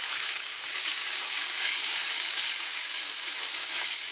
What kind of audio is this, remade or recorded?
remade